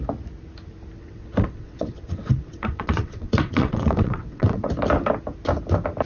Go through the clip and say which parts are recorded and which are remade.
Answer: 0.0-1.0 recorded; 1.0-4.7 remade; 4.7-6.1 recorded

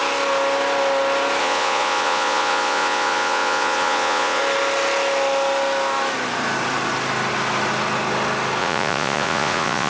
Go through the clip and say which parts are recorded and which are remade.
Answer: 0.0-1.4 recorded; 1.4-4.4 remade; 4.4-8.6 recorded; 8.6-9.9 remade